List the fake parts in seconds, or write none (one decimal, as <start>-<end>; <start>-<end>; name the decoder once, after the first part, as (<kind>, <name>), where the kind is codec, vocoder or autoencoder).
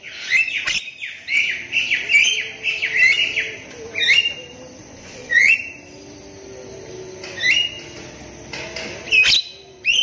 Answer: 4.8-5.5 (vocoder, Vocos)